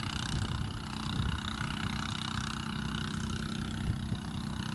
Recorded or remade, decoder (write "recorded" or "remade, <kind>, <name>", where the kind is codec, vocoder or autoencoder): recorded